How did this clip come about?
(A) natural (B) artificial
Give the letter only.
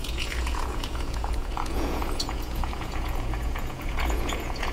B